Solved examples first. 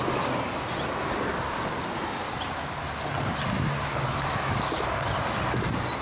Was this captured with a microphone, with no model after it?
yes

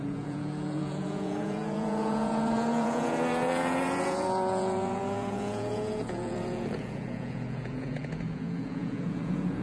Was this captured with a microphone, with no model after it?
no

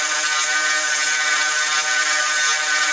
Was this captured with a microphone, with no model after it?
yes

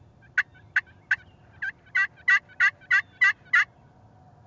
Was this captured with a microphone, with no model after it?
yes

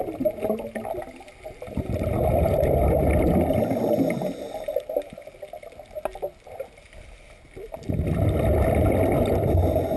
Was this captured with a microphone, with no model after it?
yes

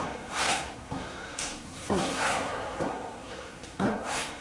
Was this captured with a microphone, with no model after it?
no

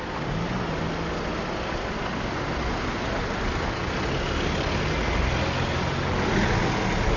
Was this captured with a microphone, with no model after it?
yes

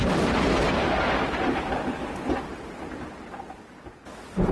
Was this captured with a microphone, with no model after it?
no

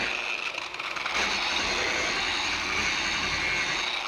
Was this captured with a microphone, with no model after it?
yes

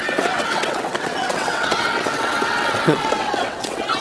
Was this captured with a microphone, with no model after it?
no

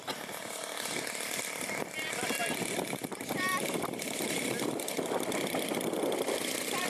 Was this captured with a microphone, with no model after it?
yes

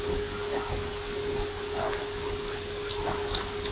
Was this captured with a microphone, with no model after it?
no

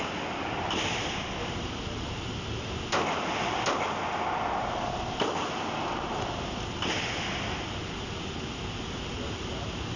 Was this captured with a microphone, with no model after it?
yes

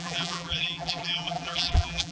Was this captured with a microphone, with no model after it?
no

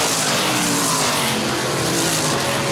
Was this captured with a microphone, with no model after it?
yes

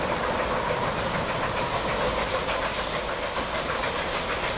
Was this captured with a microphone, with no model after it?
no